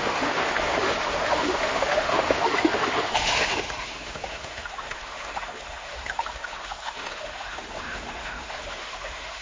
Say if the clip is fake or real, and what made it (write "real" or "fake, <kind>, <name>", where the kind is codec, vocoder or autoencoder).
fake, autoencoder, DAC-VAE